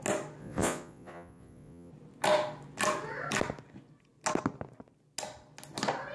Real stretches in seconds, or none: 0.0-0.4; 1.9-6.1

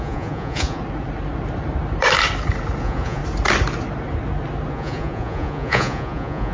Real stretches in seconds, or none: 0.8-2.8; 3.2-4.7

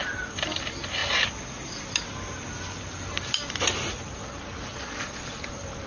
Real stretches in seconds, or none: 0.0-4.7; 5.4-5.9

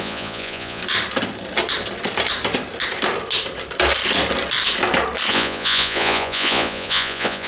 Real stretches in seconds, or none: 0.8-5.3

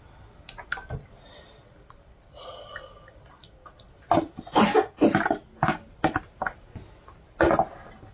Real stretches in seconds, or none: 0.0-8.1

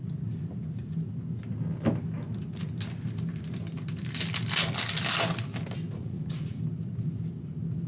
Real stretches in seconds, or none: 0.0-6.0; 6.6-7.9